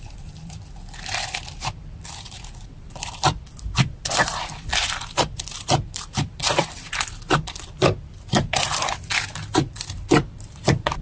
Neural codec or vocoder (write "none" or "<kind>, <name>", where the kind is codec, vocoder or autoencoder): vocoder, BigVGAN v2